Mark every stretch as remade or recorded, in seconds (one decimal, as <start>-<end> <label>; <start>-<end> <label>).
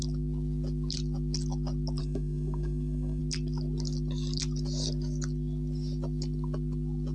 0.0-2.0 recorded; 2.0-3.2 remade; 3.2-7.1 recorded